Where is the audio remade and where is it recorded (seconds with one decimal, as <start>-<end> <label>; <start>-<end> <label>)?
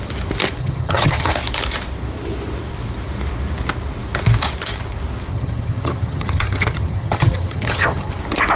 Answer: 0.0-0.6 recorded; 0.6-1.3 remade; 1.3-5.3 recorded; 5.3-8.1 remade; 8.1-8.6 recorded